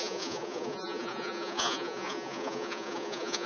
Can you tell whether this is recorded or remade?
remade